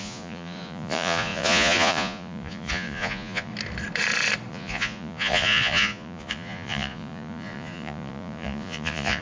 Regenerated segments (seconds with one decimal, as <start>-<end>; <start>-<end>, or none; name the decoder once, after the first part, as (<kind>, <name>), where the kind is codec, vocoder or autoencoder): 0.0-3.5 (vocoder, Vocos); 4.5-9.2